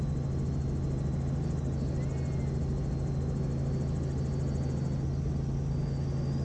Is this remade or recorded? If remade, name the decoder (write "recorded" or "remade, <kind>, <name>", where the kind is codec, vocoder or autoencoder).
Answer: recorded